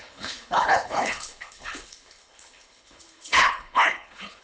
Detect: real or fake fake